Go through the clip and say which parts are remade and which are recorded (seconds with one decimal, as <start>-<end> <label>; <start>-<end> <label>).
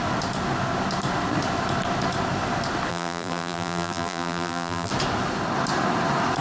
0.0-2.9 recorded; 2.9-4.9 remade; 4.9-6.4 recorded